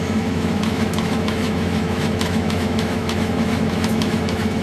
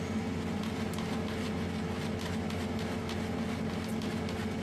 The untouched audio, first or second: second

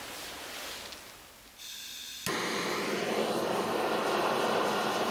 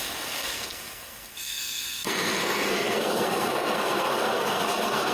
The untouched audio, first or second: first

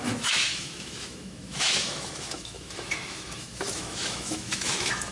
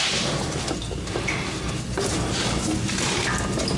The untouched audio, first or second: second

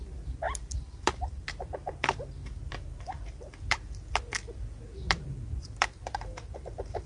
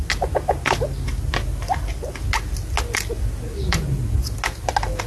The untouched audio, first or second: second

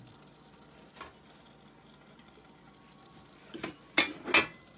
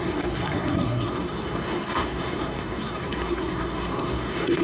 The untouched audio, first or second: first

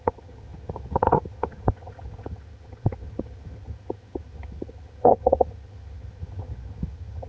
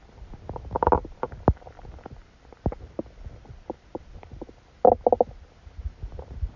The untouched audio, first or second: second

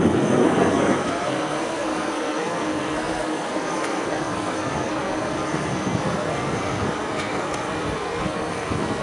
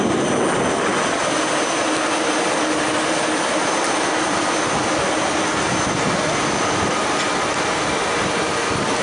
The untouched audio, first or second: second